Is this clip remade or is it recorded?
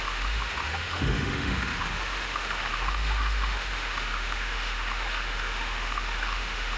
remade